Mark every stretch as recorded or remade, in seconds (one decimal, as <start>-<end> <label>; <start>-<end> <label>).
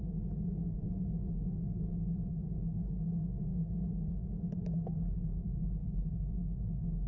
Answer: 0.0-5.8 recorded; 5.8-6.3 remade; 6.3-7.1 recorded